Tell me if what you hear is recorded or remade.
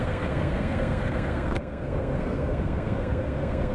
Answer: remade